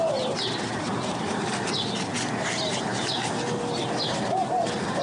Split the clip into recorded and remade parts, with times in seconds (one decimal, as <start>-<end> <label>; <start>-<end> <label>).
0.0-5.0 recorded